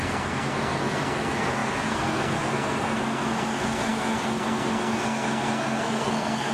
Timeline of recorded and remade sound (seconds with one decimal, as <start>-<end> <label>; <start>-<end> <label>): 0.0-6.5 remade